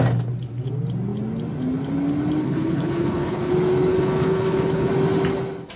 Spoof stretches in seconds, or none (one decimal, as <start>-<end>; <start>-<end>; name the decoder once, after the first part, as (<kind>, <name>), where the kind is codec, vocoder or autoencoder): 2.4-3.5 (codec, HILCodec); 3.9-4.9